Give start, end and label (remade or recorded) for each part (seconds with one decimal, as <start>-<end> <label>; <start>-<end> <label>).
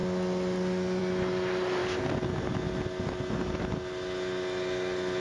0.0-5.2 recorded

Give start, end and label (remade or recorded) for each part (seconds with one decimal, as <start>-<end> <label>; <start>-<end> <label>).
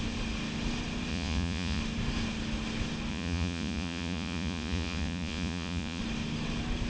0.0-1.1 recorded; 1.1-1.8 remade; 1.8-3.1 recorded; 3.1-6.0 remade; 6.0-6.9 recorded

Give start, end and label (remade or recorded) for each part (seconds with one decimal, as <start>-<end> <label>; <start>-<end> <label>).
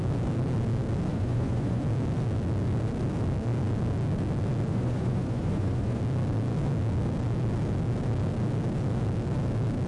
0.0-1.1 recorded; 1.1-1.8 remade; 1.8-4.7 recorded; 4.7-6.0 remade; 6.0-9.9 recorded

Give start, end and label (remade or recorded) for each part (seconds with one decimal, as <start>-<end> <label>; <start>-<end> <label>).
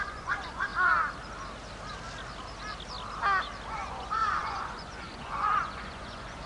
0.0-0.7 remade; 0.7-3.7 recorded; 3.7-6.5 remade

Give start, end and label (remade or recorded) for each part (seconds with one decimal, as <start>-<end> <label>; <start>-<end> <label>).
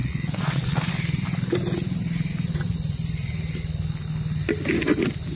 0.0-0.9 remade; 0.9-5.4 recorded